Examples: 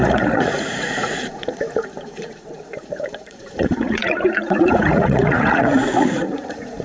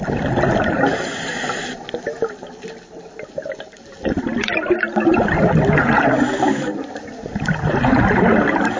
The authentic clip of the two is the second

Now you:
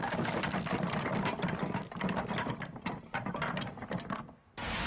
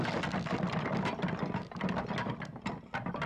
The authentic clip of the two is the second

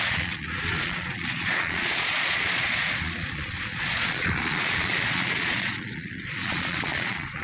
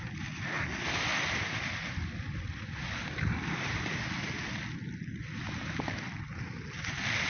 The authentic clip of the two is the second